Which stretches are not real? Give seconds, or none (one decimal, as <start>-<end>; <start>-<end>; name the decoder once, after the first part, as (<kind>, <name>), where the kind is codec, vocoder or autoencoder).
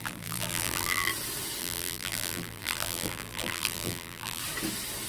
0.0-1.1 (vocoder, BigVGAN v2); 1.6-4.4